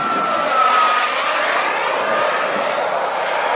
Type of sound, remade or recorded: recorded